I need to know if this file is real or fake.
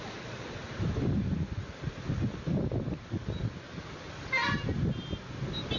real